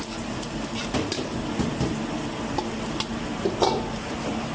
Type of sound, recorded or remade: recorded